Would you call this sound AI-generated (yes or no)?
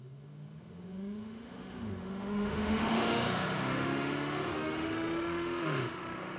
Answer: yes